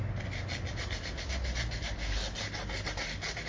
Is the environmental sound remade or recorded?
recorded